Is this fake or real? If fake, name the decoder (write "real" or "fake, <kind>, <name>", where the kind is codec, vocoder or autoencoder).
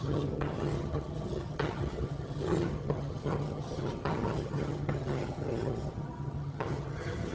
fake, vocoder, HiFi-GAN